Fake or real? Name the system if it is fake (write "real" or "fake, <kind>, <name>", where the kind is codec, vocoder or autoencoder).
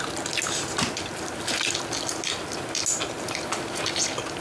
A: real